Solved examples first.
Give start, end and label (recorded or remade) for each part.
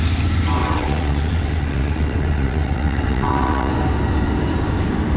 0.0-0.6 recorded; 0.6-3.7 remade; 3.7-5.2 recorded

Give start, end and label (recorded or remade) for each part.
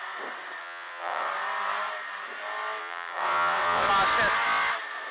0.0-0.6 recorded; 0.6-1.3 remade; 1.3-2.8 recorded; 2.8-3.9 remade; 3.9-5.1 recorded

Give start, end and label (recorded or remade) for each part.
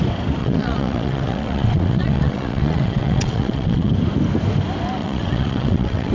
0.0-0.4 recorded; 0.4-3.9 remade; 3.9-5.0 recorded; 5.0-6.1 remade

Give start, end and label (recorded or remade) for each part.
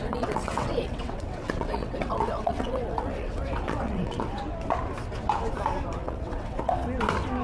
0.0-4.4 remade; 4.4-6.0 recorded; 6.0-6.7 remade; 6.7-7.4 recorded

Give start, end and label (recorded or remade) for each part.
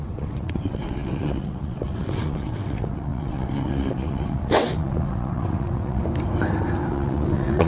0.0-6.0 remade; 6.0-6.9 recorded; 6.9-7.7 remade